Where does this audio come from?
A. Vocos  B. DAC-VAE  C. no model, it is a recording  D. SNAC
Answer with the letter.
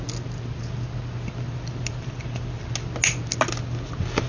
C